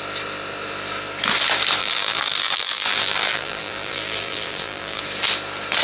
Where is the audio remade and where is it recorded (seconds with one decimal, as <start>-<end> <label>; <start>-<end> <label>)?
0.0-1.8 recorded; 1.8-5.0 remade; 5.0-5.8 recorded